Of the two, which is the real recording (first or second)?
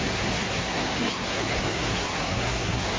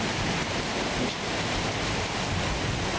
second